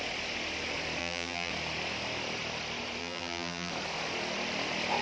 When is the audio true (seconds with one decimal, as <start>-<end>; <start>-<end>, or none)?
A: 0.0-1.0; 1.5-3.0; 3.7-5.0